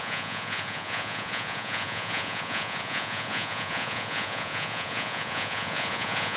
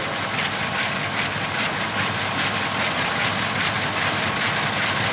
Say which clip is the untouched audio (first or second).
second